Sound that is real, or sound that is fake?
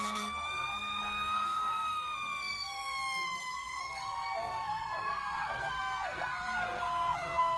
fake